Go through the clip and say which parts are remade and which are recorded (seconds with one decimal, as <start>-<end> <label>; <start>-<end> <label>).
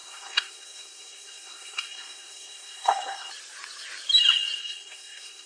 0.0-3.3 remade; 3.3-4.6 recorded; 4.6-5.5 remade